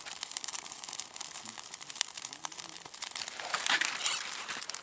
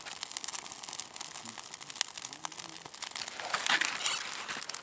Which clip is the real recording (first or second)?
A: second